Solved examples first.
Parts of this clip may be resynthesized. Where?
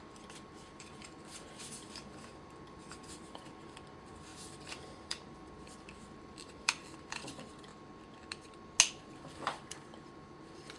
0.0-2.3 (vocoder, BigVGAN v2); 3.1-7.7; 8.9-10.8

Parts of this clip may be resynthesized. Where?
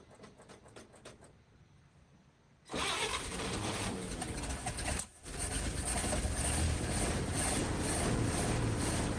3.1-4.4 (vocoder, BigVGAN v2); 6.6-7.6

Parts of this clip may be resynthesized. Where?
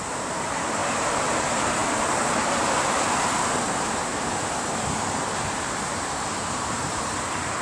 0.0-7.6 (vocoder, BigVGAN v2)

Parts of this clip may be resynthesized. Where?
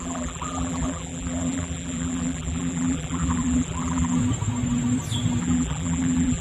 0.0-4.2 (vocoder, BigVGAN v2); 5.4-6.4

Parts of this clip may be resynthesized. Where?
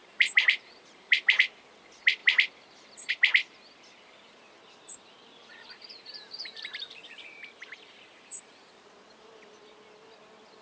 0.0-1.4 (vocoder, BigVGAN v2); 5.5-8.8